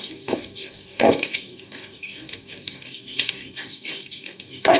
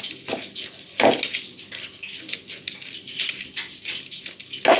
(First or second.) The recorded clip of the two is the second